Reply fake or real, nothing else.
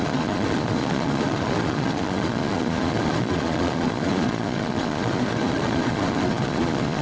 fake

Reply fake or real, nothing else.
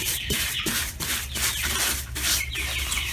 fake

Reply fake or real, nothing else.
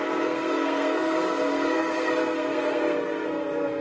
fake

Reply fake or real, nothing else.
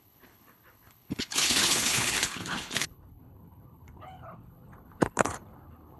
fake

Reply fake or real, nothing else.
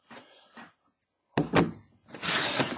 real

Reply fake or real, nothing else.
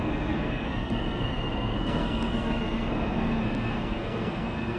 fake